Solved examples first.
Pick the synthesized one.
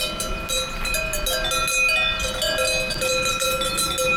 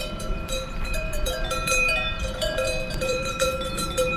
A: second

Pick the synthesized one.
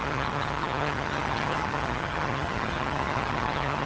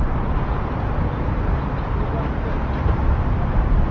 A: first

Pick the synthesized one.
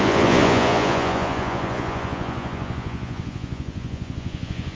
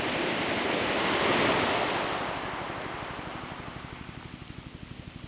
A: first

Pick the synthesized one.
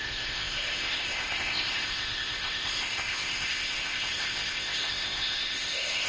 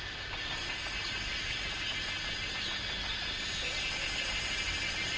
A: first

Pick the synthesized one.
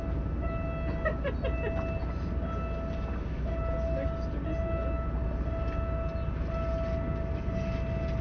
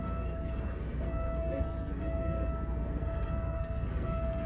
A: second